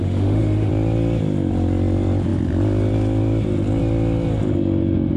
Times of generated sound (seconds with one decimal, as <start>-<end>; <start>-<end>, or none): 0.0-0.7